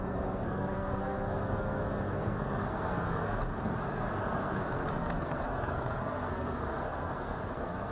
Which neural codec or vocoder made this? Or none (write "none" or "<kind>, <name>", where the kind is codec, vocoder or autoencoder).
codec, SNAC